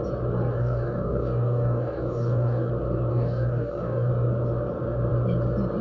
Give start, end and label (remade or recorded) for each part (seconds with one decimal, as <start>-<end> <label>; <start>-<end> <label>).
0.0-0.5 recorded; 0.5-2.7 remade; 2.7-3.1 recorded; 3.1-4.1 remade; 4.1-5.8 recorded